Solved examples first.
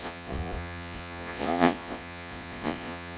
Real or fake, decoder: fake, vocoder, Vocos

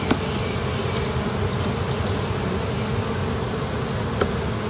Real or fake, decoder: real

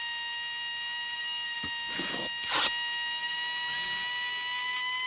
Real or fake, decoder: real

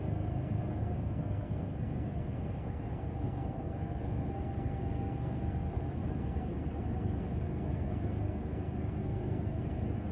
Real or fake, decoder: fake, codec, SNAC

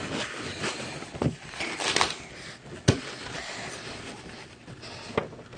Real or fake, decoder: real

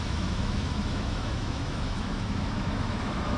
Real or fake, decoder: fake, autoencoder, DAC-VAE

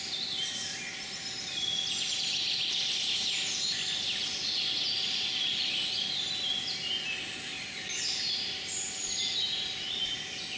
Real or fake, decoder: real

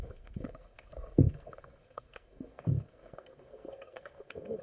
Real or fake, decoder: fake, codec, SNAC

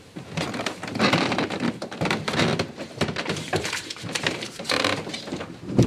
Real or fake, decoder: fake, vocoder, BigVGAN v2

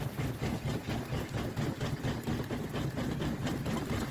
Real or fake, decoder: real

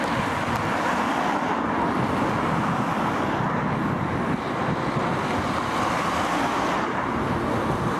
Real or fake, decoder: real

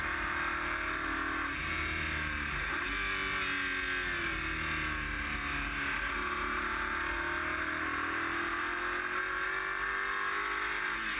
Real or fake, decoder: real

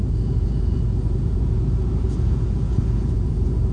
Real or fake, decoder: fake, vocoder, Vocos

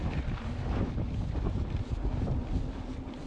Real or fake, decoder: real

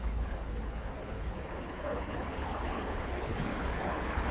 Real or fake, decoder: fake, codec, HILCodec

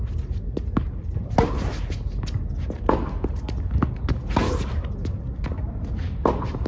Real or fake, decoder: real